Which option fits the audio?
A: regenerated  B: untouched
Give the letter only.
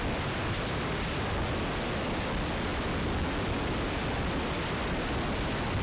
B